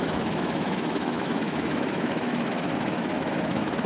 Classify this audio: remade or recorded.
remade